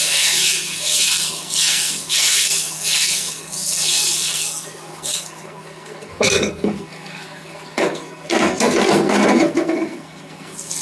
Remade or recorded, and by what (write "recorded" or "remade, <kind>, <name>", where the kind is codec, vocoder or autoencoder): remade, codec, SNAC